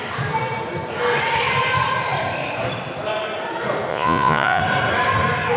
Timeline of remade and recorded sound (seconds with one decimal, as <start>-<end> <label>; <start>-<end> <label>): 0.0-3.9 recorded; 3.9-4.6 remade; 4.6-5.6 recorded